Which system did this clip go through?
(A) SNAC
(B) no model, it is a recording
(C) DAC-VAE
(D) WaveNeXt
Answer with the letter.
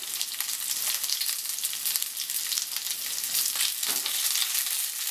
B